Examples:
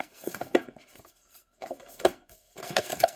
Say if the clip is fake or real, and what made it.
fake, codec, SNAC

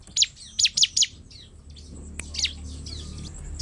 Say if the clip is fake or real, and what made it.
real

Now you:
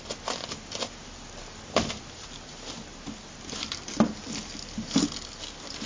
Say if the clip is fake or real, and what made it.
real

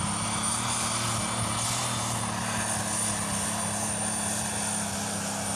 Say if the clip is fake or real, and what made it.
real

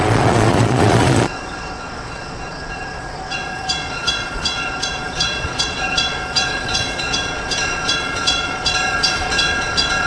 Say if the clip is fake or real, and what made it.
fake, vocoder, Vocos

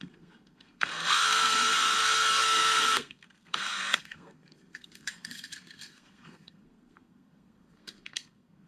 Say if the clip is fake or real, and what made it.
fake, codec, SNAC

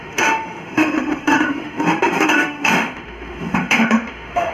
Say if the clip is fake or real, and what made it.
fake, autoencoder, DAC-VAE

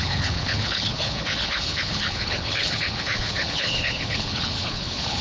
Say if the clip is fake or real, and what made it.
fake, codec, HILCodec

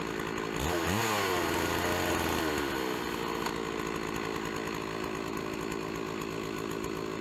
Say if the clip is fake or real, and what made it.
real